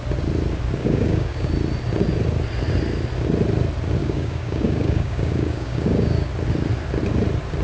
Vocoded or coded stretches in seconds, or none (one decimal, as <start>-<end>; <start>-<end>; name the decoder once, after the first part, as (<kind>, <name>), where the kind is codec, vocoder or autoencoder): 0.8-1.5 (codec, DAC); 4.0-6.3